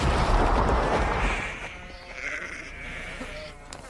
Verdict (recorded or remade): remade